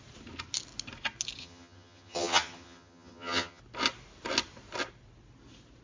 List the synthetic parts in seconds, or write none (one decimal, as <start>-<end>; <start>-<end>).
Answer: 1.4-3.6